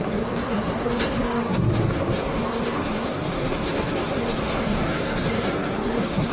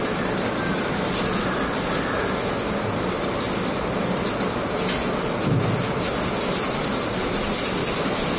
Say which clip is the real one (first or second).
second